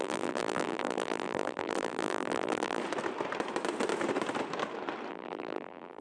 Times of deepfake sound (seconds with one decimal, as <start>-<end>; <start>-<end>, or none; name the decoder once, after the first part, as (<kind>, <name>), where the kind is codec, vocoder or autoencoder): 0.0-2.8 (vocoder, BigVGAN v2); 5.1-6.0